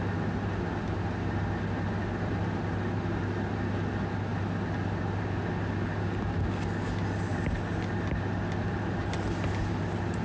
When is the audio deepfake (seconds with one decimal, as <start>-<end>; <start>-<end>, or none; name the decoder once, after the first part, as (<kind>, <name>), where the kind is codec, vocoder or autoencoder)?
none